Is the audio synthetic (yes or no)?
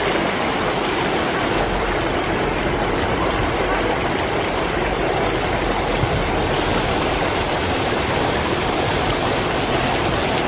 no